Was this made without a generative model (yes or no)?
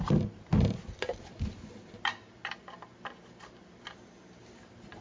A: yes